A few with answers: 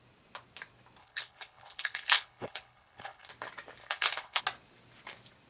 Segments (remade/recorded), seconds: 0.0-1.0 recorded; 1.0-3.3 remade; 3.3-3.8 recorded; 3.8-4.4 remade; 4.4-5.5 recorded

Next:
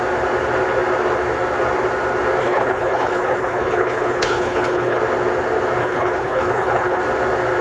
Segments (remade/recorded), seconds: 0.0-2.4 recorded; 2.4-5.0 remade; 5.0-5.8 recorded; 5.8-7.0 remade; 7.0-7.6 recorded